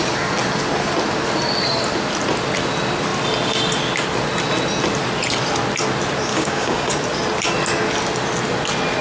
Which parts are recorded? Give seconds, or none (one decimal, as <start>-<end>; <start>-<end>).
0.0-6.3; 6.9-9.0